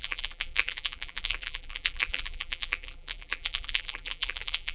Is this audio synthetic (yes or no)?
yes